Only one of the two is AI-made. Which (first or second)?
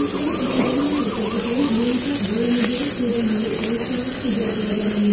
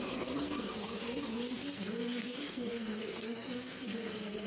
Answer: second